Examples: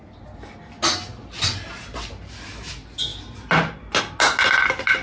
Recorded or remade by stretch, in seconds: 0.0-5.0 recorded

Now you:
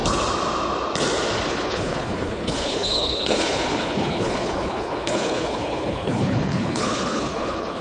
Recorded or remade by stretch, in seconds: 0.0-1.5 recorded; 1.5-7.8 remade

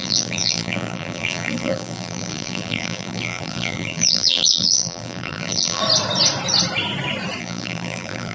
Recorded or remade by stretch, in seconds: 0.0-5.8 remade; 5.8-7.4 recorded; 7.4-8.3 remade

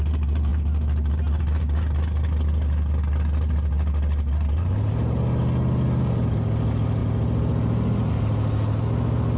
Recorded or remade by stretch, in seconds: 0.0-9.4 recorded